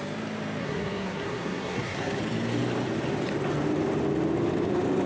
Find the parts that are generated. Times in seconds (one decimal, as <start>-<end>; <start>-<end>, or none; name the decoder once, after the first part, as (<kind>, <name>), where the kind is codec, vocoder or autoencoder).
0.6-2.2 (codec, SNAC)